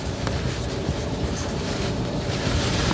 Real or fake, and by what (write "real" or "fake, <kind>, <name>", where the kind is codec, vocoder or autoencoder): fake, vocoder, BigVGAN v2